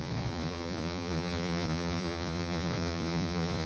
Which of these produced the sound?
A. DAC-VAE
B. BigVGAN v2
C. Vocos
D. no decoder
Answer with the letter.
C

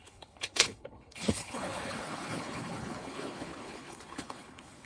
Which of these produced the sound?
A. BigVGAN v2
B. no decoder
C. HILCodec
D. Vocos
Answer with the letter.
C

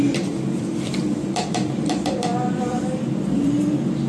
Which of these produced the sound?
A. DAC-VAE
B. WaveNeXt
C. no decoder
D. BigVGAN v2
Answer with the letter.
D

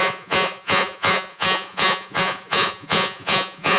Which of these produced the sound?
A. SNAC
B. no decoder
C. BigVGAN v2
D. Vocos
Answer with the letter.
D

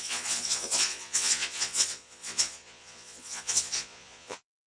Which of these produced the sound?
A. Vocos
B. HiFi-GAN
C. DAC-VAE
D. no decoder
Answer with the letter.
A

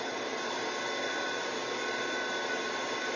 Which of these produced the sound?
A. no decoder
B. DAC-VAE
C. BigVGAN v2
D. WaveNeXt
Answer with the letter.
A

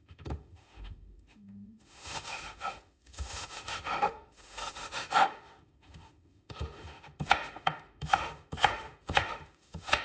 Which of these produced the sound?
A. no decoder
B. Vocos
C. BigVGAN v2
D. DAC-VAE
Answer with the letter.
D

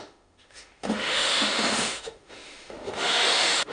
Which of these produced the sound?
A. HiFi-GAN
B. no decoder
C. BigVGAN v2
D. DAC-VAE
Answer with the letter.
D